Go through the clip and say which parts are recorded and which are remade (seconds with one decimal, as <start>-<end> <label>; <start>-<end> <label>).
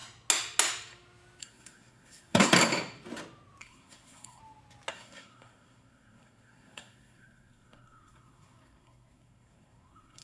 0.0-1.4 recorded; 1.4-2.5 remade; 2.5-3.6 recorded; 3.6-4.4 remade; 4.4-4.9 recorded; 4.9-10.2 remade